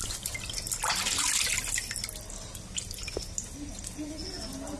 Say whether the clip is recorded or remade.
recorded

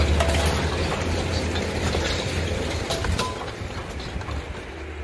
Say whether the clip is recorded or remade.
recorded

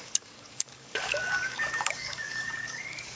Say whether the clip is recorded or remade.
remade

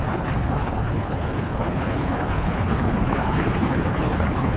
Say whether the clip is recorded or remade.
remade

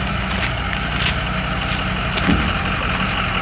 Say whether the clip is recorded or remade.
recorded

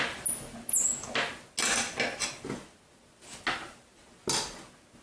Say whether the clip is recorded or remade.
recorded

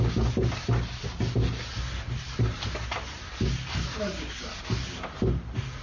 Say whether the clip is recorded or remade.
recorded